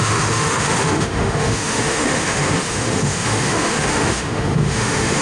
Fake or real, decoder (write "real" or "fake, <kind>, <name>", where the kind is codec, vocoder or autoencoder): fake, autoencoder, DAC-VAE